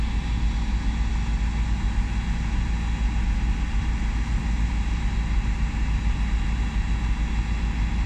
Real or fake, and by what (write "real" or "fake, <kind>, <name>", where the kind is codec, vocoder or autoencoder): real